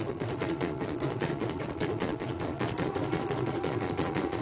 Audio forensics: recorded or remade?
remade